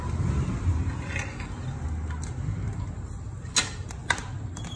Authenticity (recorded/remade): recorded